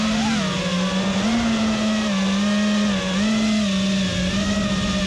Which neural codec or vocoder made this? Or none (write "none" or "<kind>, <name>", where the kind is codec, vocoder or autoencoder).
none